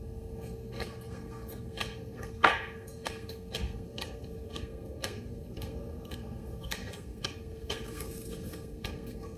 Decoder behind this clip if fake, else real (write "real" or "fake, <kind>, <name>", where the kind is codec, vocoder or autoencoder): fake, codec, SNAC